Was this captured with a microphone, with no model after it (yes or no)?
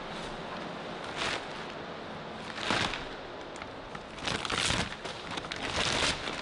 yes